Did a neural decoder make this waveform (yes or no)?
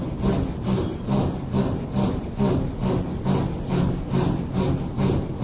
no